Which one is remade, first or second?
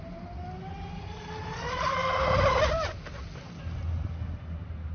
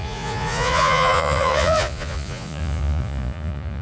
second